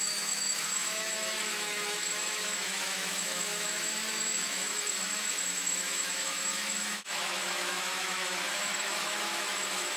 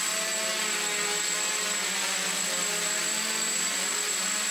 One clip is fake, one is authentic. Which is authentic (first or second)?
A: second